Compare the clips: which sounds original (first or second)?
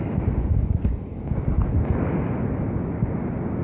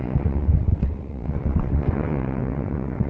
first